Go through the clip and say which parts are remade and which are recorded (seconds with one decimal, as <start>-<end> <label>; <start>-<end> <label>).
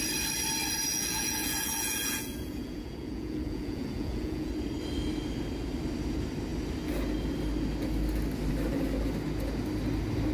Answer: 0.0-0.9 recorded; 0.9-4.5 remade; 4.5-10.3 recorded